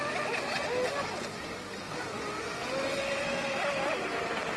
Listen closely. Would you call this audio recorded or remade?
recorded